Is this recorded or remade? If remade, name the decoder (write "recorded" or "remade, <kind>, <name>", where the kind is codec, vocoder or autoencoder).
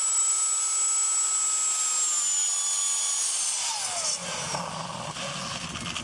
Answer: recorded